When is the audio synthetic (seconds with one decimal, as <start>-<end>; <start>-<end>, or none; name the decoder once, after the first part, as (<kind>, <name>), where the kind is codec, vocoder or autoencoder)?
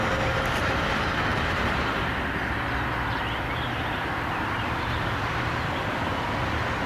1.3-2.3 (vocoder, BigVGAN v2)